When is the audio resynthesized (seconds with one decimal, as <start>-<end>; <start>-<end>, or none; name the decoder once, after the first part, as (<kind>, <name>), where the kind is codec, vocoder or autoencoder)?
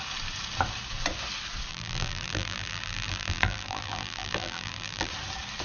1.7-5.1 (vocoder, BigVGAN v2)